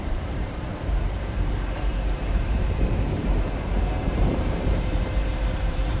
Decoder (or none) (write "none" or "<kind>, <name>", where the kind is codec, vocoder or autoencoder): vocoder, BigVGAN v2